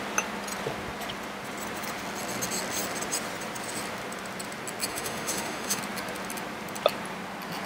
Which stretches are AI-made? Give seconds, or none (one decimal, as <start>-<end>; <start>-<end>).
4.9-5.8